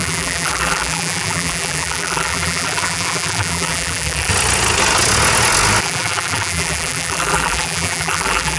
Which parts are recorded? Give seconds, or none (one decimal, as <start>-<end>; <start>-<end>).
4.3-5.8